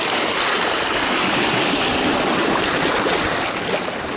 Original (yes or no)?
yes